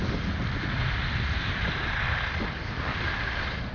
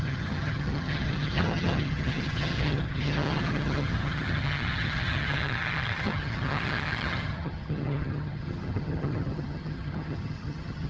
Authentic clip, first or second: first